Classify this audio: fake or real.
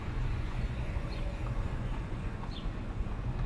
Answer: fake